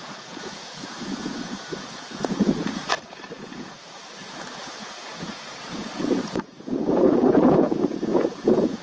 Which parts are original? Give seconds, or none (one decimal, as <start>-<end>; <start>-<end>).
none